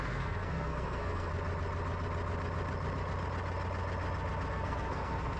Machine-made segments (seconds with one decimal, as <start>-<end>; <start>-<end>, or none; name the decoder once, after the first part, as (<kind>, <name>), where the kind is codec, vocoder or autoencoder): 0.0-1.3 (codec, SNAC); 4.5-5.4